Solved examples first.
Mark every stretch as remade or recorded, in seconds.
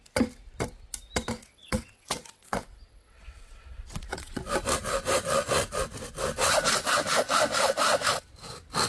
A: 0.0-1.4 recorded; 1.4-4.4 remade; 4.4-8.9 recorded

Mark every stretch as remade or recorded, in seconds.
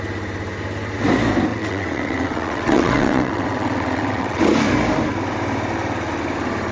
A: 0.0-1.5 recorded; 1.5-4.4 remade; 4.4-6.7 recorded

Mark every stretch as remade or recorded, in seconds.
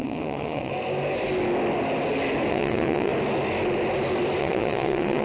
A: 0.0-0.7 remade; 0.7-2.5 recorded; 2.5-3.1 remade; 3.1-4.4 recorded; 4.4-5.2 remade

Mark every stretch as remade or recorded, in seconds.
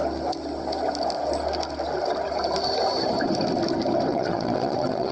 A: 0.0-4.1 recorded; 4.1-5.1 remade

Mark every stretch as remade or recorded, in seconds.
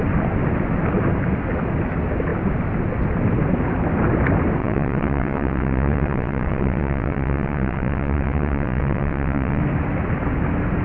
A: 0.0-4.6 recorded; 4.6-9.6 remade; 9.6-10.8 recorded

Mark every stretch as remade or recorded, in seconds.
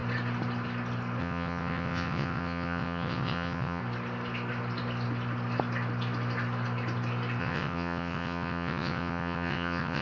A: 0.0-1.2 recorded; 1.2-3.8 remade; 3.8-7.4 recorded; 7.4-10.0 remade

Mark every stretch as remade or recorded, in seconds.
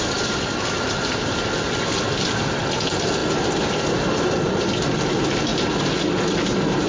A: 0.0-6.9 recorded